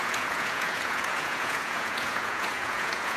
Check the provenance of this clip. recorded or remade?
remade